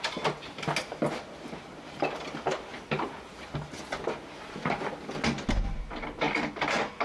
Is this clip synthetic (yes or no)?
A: no